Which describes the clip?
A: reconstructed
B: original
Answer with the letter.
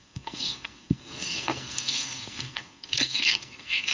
A